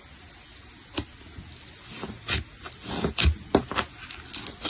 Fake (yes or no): no